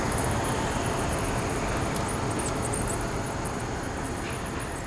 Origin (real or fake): real